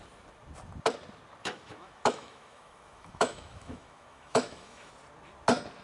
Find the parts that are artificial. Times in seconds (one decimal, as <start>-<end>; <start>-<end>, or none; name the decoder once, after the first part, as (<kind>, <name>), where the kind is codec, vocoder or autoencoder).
1.4-4.9 (autoencoder, DAC-VAE)